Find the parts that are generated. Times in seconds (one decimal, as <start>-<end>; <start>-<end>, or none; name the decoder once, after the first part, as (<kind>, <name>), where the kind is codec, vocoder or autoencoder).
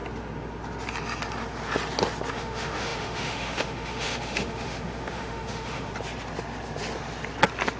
2.3-5.9 (autoencoder, DAC-VAE)